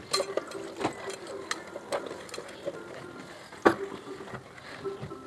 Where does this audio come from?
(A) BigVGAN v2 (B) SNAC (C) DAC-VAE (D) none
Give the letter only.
D